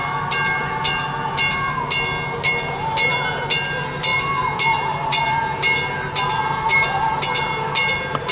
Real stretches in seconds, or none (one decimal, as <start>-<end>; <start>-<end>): 0.0-8.3